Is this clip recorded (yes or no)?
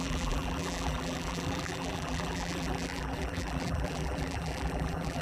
no